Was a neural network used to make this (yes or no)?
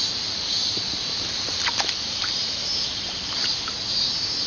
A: yes